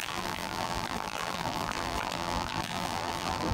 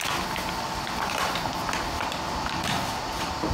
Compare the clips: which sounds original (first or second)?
second